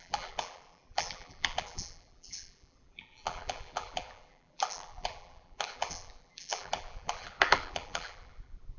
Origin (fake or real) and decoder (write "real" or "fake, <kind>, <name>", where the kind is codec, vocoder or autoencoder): fake, vocoder, BigVGAN v2